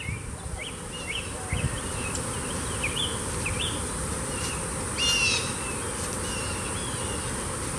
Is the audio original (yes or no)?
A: yes